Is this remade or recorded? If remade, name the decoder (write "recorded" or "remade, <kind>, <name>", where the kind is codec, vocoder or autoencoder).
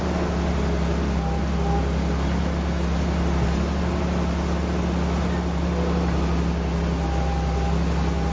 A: recorded